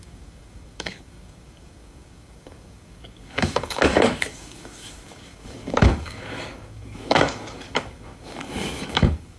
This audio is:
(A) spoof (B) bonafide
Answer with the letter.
A